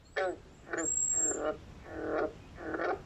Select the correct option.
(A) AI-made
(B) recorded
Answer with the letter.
B